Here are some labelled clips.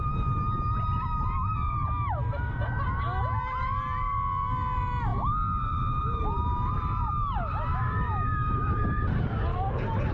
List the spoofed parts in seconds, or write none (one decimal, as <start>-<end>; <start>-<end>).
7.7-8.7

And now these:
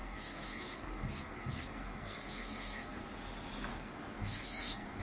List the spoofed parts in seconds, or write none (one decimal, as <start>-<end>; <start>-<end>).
0.0-3.0; 3.7-5.0

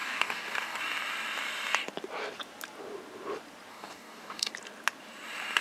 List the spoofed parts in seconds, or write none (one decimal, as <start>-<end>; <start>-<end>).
0.0-0.8; 3.7-4.5